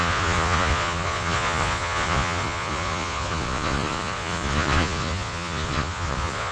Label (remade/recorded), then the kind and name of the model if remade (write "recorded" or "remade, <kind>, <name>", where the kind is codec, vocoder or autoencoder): remade, vocoder, Vocos